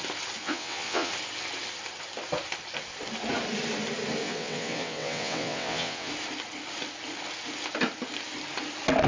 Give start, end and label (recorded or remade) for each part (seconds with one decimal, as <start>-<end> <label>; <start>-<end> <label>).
0.0-0.4 recorded; 0.4-1.1 remade; 1.1-4.2 recorded; 4.2-6.1 remade; 6.1-9.1 recorded